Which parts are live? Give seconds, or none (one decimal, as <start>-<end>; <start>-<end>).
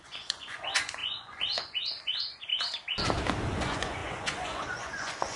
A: 2.5-3.5